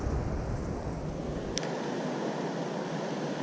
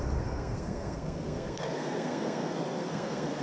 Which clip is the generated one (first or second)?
second